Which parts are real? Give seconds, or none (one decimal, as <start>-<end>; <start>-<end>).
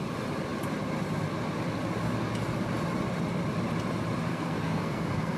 0.0-4.3